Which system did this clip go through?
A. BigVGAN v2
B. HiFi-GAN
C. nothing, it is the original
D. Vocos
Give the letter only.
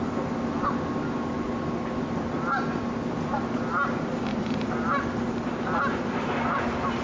C